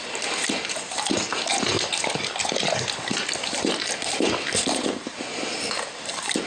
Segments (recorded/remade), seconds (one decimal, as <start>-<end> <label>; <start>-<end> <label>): 0.0-6.5 recorded